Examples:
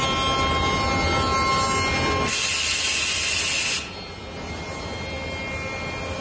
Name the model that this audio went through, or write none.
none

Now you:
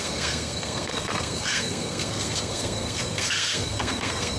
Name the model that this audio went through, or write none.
codec, SNAC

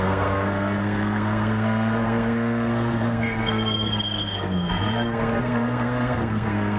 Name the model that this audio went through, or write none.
codec, SNAC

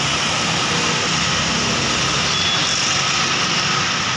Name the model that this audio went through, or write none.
none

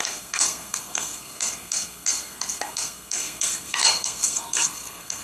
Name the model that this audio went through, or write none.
codec, SNAC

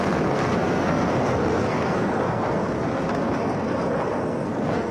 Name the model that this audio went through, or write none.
codec, SNAC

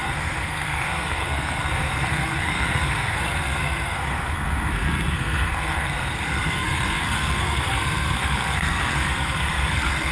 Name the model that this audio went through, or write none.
codec, SNAC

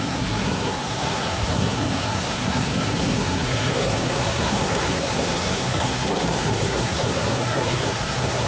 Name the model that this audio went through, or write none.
codec, SNAC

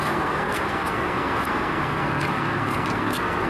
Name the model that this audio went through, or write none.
codec, SNAC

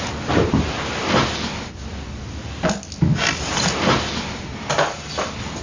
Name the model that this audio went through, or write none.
none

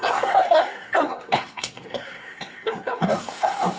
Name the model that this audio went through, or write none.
codec, SNAC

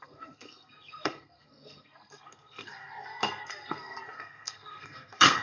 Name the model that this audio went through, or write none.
codec, SNAC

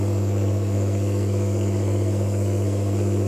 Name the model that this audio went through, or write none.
codec, SNAC